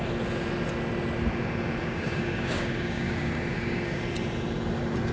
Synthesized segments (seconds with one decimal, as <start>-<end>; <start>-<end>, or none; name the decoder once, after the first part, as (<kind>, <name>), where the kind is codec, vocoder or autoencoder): 1.8-4.0 (codec, DAC)